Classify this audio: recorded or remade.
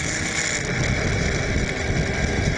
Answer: recorded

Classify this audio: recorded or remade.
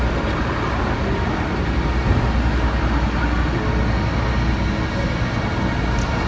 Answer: recorded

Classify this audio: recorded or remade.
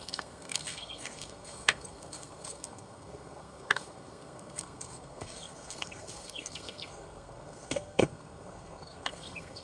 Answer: remade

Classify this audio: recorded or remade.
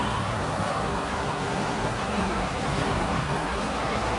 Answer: remade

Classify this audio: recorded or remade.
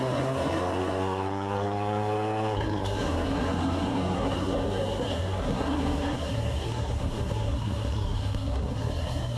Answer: remade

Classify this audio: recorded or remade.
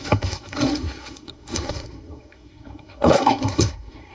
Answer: remade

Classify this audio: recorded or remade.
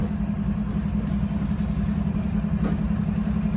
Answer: recorded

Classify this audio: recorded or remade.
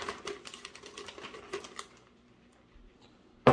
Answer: recorded